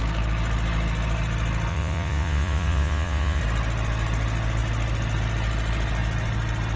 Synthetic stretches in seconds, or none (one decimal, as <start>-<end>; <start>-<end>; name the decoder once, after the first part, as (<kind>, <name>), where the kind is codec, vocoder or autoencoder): 1.7-3.4 (vocoder, Vocos)